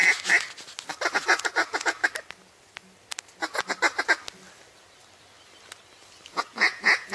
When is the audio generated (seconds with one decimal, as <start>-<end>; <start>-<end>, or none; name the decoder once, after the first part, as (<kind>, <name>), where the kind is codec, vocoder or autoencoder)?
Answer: 1.1-2.0 (vocoder, Vocos); 6.3-7.1